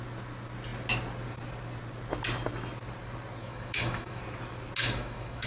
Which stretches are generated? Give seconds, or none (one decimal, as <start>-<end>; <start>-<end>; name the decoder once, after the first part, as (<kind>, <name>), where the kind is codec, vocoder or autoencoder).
3.4-4.2 (autoencoder, DAC-VAE); 4.8-5.5